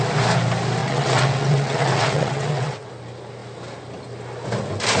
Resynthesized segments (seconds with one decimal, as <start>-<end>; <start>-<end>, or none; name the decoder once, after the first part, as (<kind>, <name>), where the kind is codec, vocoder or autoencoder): 0.8-2.9 (vocoder, WaveNeXt)